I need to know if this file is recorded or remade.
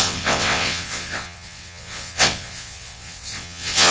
remade